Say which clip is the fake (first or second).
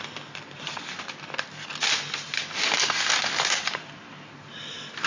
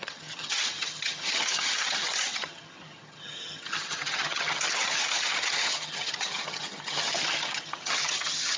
second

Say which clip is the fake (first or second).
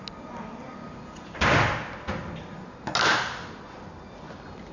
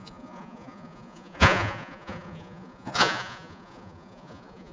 second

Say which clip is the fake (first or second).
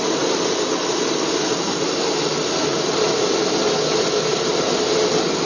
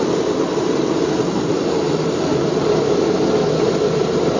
second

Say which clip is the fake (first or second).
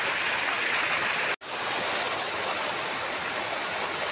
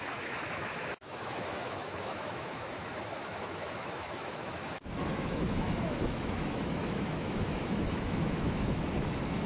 second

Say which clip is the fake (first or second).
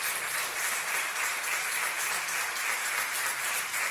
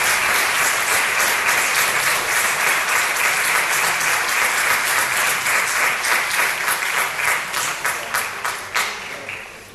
second